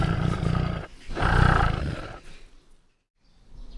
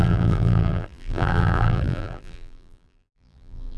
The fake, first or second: second